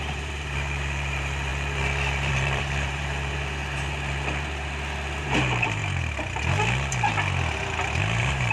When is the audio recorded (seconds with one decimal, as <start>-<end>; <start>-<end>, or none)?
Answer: 3.6-5.2; 5.8-8.0